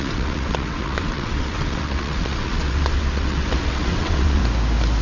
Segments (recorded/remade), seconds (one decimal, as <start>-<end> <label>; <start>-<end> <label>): 0.0-4.4 remade; 4.4-5.0 recorded